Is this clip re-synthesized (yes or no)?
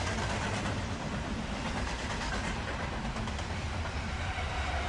yes